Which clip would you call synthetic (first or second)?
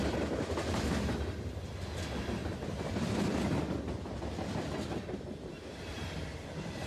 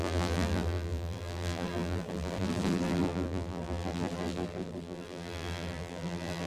second